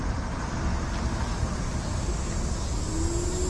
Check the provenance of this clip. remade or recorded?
recorded